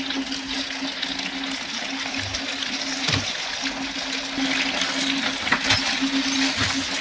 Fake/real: real